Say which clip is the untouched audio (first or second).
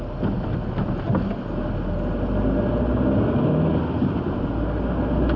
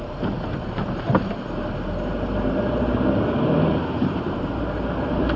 first